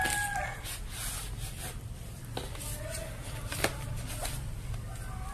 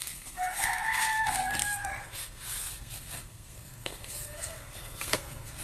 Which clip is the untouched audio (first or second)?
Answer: first